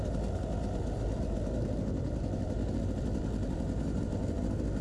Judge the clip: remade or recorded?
recorded